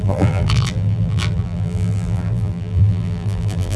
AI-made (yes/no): yes